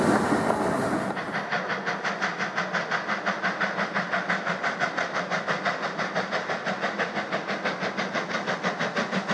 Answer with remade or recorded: recorded